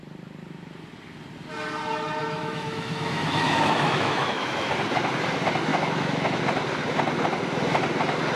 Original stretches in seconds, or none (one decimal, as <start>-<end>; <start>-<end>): 0.0-2.2; 4.7-5.7; 6.4-8.4